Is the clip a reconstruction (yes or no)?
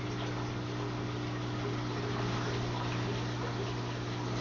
no